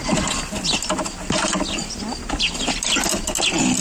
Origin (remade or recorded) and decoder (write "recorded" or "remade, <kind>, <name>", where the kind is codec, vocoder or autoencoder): recorded